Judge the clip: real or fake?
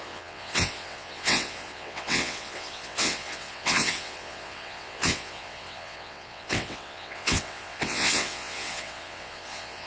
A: fake